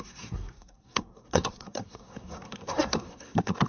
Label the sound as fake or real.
fake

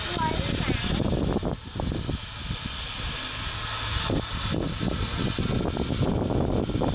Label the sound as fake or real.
real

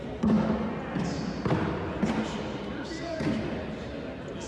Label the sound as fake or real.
real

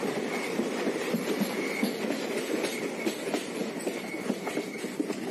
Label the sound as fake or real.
real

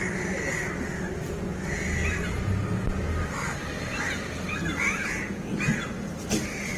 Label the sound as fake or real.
real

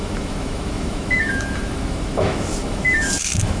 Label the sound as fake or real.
fake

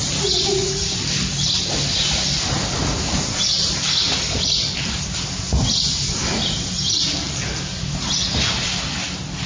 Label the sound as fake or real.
real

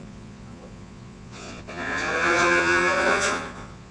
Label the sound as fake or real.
fake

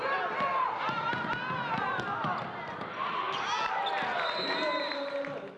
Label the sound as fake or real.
real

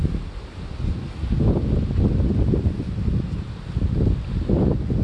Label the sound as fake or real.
real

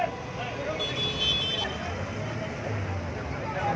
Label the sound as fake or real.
real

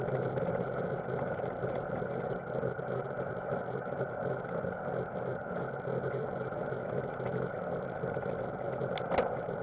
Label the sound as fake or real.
real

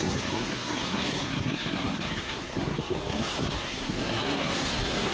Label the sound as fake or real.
fake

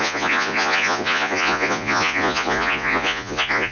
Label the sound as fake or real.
fake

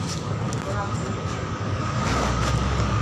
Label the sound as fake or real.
fake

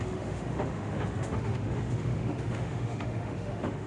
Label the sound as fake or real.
fake